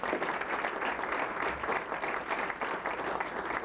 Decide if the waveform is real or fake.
real